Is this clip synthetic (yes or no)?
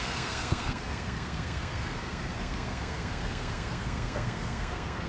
yes